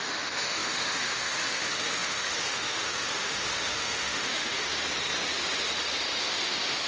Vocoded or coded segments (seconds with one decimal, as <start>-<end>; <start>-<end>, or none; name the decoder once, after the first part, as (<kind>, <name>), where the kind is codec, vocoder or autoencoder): 0.0-4.7 (autoencoder, DAC-VAE); 6.2-6.9